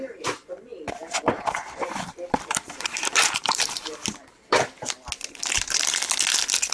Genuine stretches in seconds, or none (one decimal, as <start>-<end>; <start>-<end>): 0.0-0.7; 4.7-6.7